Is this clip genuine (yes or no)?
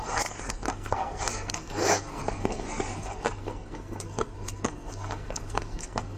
no